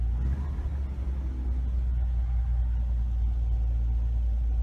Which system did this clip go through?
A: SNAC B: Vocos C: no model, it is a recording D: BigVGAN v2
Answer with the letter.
C